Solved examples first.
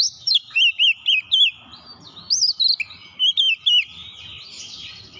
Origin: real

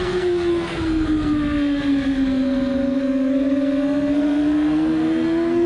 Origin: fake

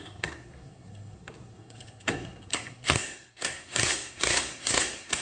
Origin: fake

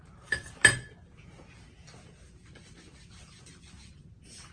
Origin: real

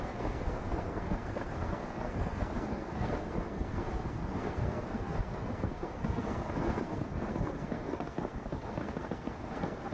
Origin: fake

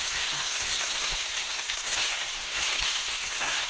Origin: fake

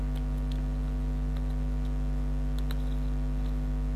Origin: real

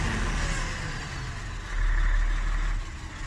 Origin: real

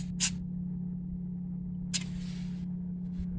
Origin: real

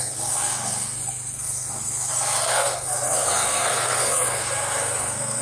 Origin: fake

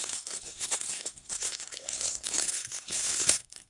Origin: fake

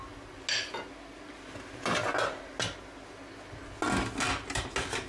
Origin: real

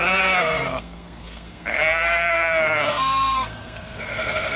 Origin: fake